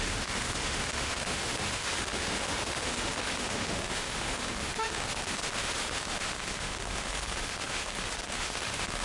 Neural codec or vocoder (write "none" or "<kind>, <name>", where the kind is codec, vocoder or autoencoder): autoencoder, DAC-VAE